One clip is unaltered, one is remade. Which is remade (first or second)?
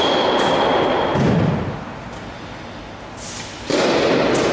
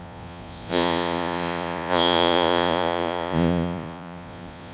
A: second